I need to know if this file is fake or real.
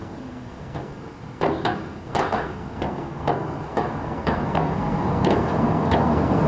fake